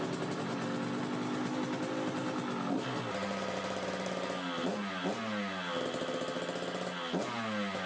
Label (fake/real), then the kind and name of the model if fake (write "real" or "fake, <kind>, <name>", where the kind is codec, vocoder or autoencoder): real